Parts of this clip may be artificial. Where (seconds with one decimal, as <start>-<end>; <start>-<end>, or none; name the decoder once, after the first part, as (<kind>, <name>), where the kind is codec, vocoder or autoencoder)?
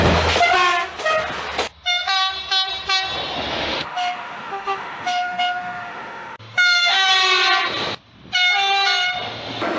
3.5-7.1 (autoencoder, DAC-VAE)